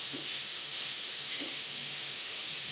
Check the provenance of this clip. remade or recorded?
remade